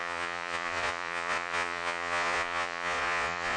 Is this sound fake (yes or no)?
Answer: yes